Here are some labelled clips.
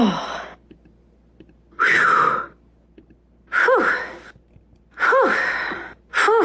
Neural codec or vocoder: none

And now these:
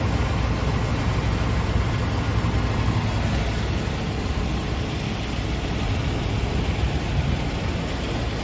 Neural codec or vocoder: none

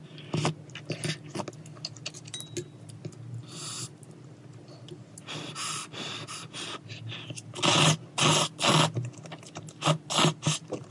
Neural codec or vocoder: none